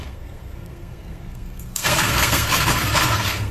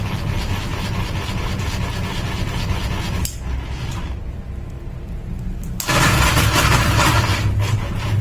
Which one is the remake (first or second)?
first